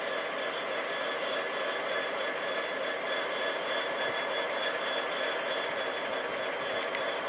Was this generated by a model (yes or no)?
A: no